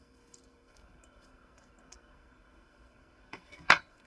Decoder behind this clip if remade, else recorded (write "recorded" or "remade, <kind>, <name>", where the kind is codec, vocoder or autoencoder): remade, codec, SNAC